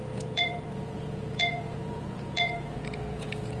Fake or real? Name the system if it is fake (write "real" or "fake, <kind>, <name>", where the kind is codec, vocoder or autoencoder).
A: fake, vocoder, Vocos